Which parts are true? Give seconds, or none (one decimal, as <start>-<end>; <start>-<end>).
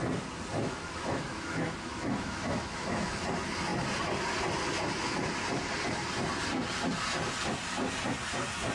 0.0-0.6; 3.2-8.7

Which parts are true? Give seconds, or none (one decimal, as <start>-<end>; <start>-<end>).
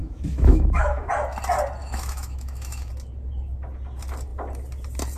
1.1-1.8; 2.9-5.2